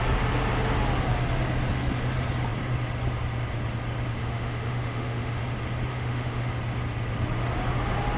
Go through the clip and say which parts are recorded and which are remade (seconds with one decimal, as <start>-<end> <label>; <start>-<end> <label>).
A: 0.0-4.2 recorded; 4.2-5.4 remade; 5.4-5.9 recorded; 5.9-6.5 remade; 6.5-8.2 recorded